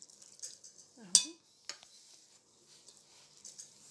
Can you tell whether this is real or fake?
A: real